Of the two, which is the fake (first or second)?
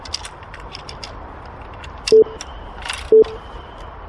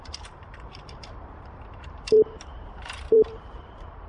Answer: second